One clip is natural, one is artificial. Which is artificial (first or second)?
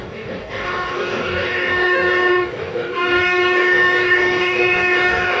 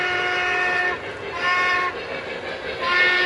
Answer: first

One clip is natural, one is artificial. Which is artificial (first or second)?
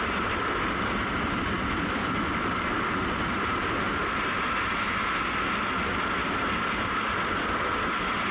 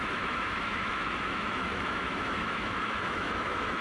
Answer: second